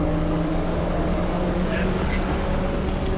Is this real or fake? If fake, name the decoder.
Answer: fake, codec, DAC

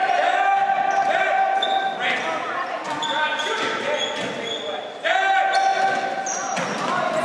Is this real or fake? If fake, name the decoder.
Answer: real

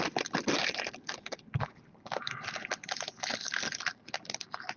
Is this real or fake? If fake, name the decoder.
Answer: real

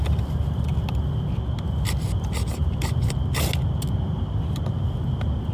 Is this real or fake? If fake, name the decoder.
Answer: real